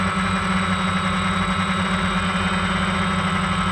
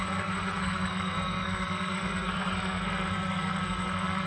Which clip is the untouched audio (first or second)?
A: first